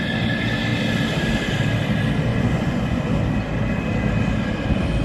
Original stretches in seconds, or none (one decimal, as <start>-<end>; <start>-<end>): 0.0-2.3; 3.0-5.0